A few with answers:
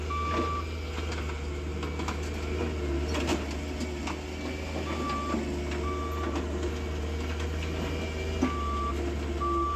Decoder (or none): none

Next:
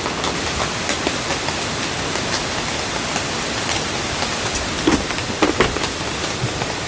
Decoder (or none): none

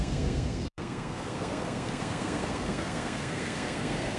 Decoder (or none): codec, SNAC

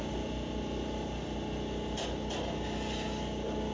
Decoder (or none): none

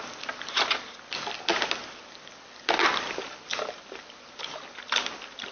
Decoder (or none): none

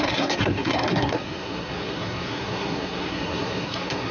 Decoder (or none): codec, SNAC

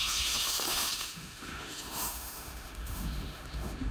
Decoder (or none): autoencoder, DAC-VAE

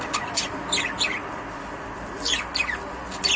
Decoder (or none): none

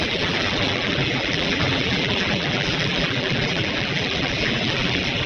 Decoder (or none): vocoder, BigVGAN v2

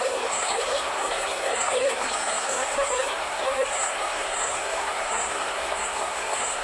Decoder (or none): codec, SNAC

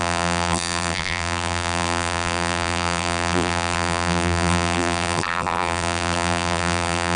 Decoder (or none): vocoder, BigVGAN v2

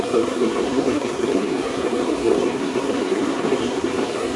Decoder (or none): codec, SNAC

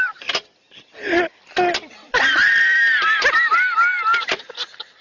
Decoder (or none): none